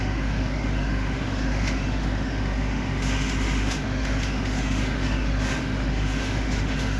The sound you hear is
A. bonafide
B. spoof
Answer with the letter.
B